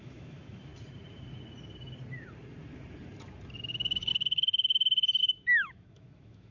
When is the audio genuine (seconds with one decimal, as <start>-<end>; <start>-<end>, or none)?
0.7-3.6; 4.1-5.2